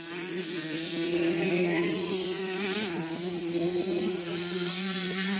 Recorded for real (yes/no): no